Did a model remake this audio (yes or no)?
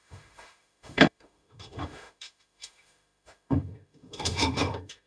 yes